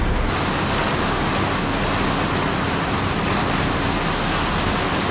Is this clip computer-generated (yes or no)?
no